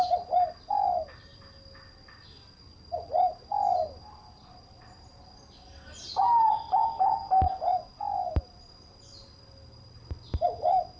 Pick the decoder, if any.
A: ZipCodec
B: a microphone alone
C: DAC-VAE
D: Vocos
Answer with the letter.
B